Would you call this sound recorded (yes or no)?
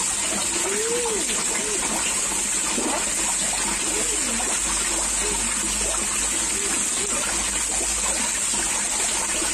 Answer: yes